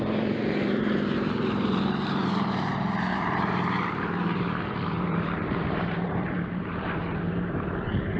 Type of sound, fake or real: fake